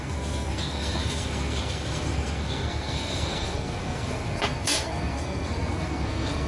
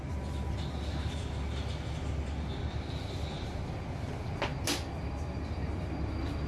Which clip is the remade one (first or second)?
first